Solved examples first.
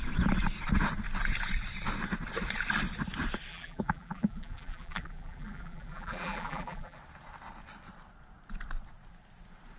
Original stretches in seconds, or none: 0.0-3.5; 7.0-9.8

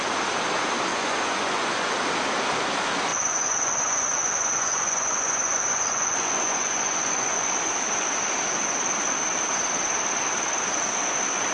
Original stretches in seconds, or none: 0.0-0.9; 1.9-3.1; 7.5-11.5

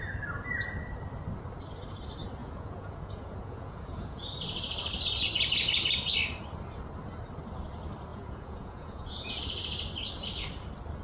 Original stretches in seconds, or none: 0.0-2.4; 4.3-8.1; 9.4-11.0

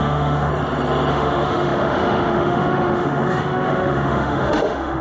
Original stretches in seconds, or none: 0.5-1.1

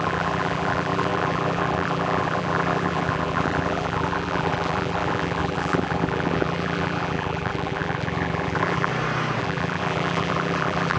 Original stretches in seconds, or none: 8.9-9.4